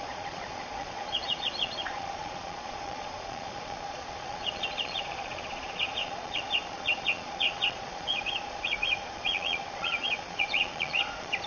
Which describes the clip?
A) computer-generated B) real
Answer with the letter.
A